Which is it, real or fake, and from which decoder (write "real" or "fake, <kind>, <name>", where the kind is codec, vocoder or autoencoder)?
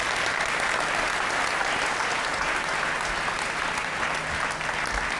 real